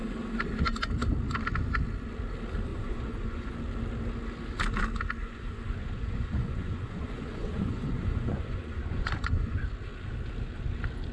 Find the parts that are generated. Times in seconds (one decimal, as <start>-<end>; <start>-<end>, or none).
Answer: 2.7-3.5; 5.2-9.6